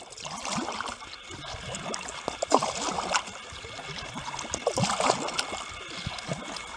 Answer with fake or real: real